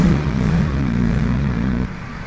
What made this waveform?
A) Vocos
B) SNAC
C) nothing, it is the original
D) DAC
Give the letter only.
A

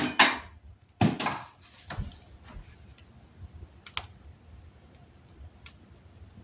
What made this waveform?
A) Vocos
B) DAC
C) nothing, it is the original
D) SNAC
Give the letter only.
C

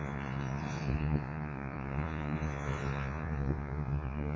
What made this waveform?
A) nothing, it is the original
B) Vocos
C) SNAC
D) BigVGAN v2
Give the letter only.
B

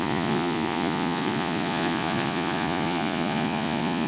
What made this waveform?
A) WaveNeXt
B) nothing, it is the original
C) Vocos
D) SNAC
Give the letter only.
C